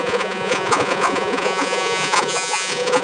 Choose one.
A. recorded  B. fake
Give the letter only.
B